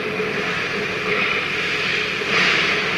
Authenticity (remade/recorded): recorded